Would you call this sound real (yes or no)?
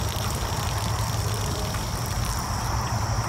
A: no